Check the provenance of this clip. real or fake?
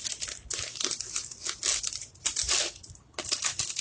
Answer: real